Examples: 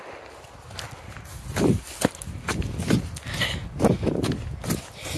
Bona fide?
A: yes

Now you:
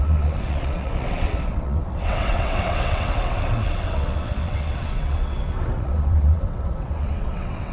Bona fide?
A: no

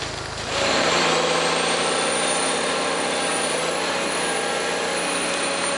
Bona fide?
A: yes